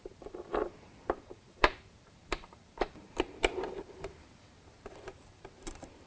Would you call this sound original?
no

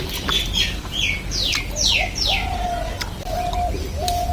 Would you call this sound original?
yes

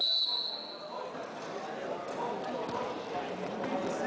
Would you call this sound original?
yes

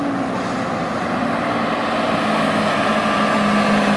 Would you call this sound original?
yes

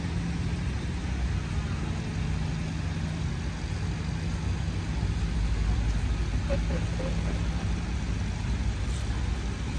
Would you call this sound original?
yes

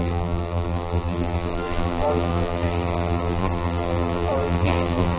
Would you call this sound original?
no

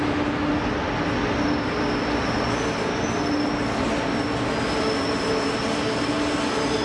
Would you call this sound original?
yes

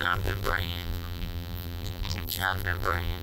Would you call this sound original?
no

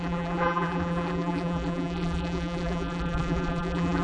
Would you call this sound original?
no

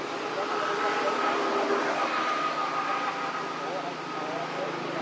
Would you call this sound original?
yes